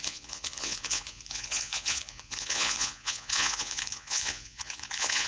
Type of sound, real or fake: fake